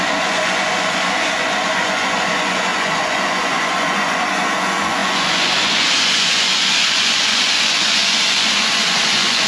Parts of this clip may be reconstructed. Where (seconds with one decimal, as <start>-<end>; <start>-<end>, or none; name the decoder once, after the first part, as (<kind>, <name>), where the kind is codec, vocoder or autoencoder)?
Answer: 0.0-9.5 (vocoder, Vocos)